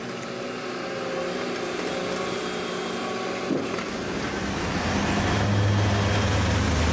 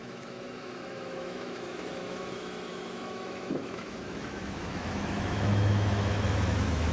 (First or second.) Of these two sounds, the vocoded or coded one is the second